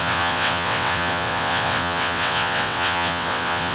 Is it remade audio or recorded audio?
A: remade